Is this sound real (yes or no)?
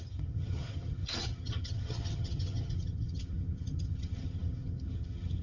no